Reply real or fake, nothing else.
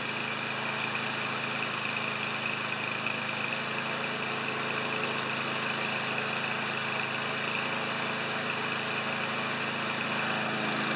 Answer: real